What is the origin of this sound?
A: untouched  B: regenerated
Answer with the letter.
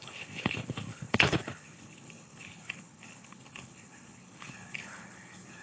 B